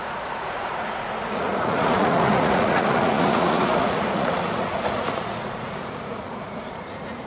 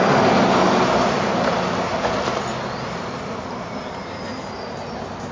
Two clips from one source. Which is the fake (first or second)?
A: first